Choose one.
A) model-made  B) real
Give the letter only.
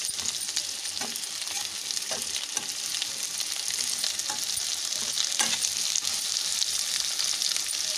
B